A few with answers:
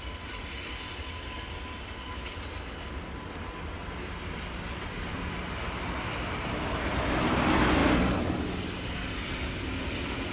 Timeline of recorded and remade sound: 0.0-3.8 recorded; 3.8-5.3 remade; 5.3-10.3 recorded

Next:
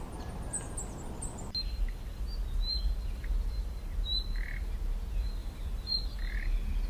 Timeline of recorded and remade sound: 0.0-5.4 recorded; 5.4-6.2 remade; 6.2-6.9 recorded

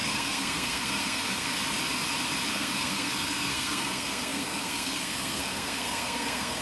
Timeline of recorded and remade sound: 0.0-1.6 remade; 1.6-2.5 recorded; 2.5-6.6 remade

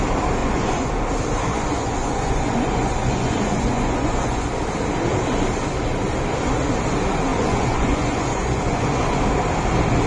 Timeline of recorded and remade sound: 0.0-0.4 recorded; 0.4-0.9 remade; 0.9-1.5 recorded; 1.5-4.5 remade; 4.5-7.3 recorded; 7.3-9.2 remade; 9.2-10.1 recorded

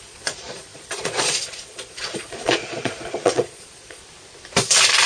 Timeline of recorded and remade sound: 0.0-4.0 remade; 4.0-5.1 recorded

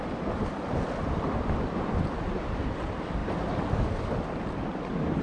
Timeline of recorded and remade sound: 0.0-5.2 recorded